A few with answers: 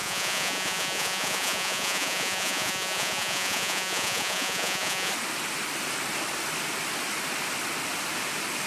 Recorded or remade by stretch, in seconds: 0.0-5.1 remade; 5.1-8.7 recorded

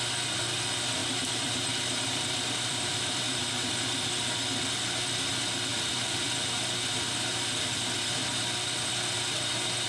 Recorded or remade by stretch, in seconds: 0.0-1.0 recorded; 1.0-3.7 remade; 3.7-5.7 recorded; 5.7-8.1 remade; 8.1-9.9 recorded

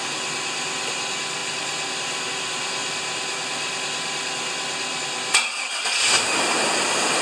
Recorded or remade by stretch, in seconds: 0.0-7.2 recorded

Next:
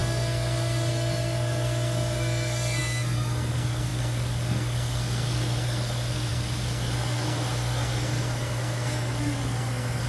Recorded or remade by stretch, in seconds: 0.0-10.1 remade

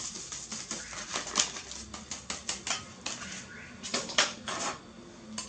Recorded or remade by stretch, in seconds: 0.0-3.9 recorded; 3.9-4.8 remade; 4.8-5.5 recorded

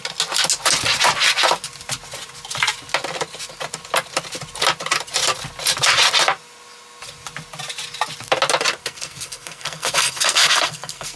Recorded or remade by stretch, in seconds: 0.0-8.8 recorded; 8.8-11.2 remade

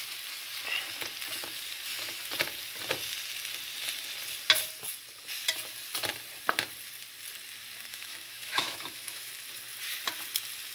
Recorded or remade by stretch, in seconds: 0.0-7.9 recorded; 7.9-9.3 remade; 9.3-10.7 recorded

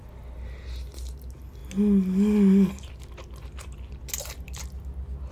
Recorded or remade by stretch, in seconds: 0.0-5.3 recorded